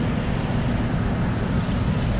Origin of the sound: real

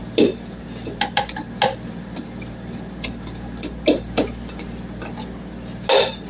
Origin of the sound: real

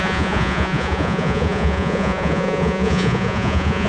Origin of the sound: fake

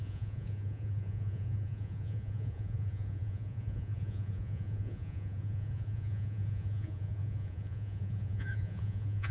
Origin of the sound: fake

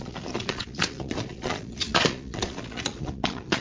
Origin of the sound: fake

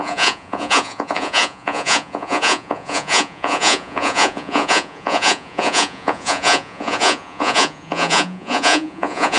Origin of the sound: fake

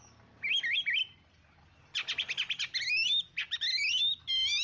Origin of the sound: real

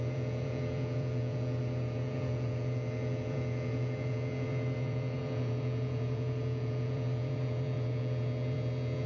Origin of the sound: fake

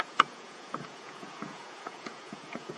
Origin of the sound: fake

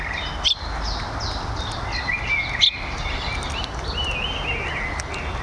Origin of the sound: real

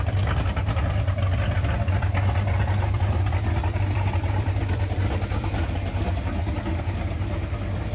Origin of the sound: real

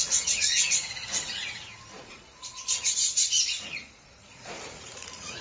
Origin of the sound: fake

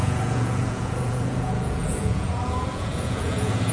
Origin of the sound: fake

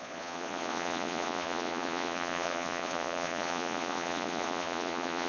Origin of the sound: fake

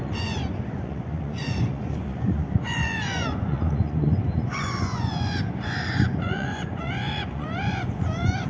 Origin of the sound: fake